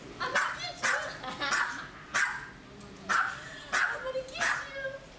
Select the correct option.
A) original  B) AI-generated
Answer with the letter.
A